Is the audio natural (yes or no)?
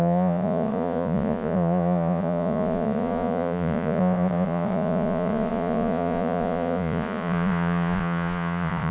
no